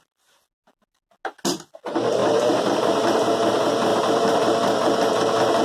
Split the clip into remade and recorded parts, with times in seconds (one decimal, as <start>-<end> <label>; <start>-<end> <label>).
0.0-2.2 recorded; 2.2-2.8 remade; 2.8-3.9 recorded; 3.9-5.0 remade; 5.0-5.6 recorded